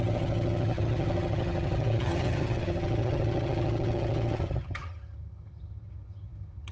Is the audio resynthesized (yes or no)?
yes